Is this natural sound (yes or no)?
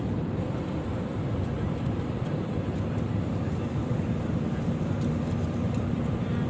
no